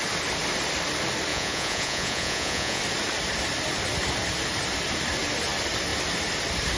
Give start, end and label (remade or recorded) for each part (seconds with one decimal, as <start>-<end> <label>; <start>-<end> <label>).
0.0-1.3 recorded; 1.3-2.8 remade; 2.8-6.8 recorded